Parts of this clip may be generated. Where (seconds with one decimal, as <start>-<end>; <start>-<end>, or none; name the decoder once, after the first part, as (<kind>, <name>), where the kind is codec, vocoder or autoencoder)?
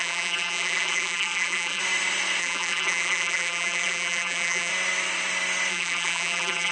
0.0-1.8 (vocoder, BigVGAN v2); 2.4-4.7; 5.7-6.7